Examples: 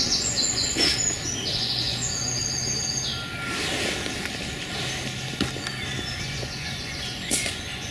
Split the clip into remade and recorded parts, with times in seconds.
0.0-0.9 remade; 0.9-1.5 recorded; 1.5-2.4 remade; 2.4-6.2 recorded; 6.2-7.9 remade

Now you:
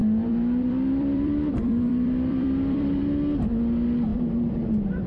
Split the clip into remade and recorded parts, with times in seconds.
0.0-3.0 remade; 3.0-5.1 recorded